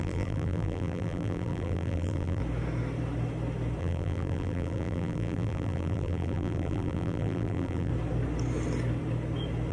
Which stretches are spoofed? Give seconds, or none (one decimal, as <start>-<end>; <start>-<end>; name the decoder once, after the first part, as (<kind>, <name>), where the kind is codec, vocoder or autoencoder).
0.0-2.4 (vocoder, BigVGAN v2); 3.8-7.9